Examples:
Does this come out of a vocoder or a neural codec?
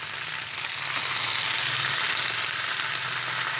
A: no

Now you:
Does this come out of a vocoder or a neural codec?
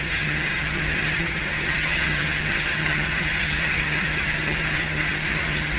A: yes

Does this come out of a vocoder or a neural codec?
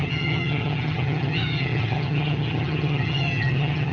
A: yes